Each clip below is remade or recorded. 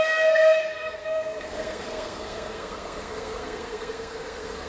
remade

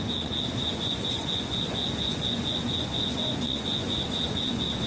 remade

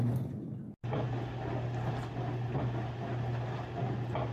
recorded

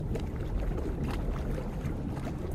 recorded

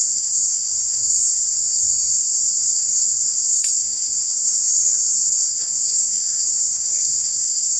remade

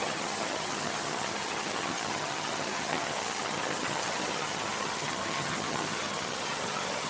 remade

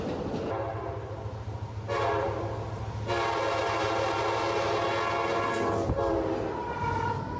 recorded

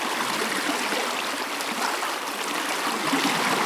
recorded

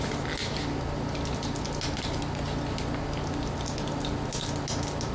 recorded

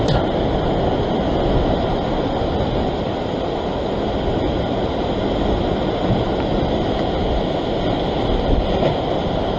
recorded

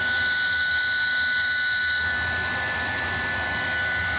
recorded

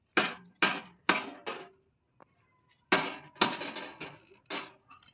recorded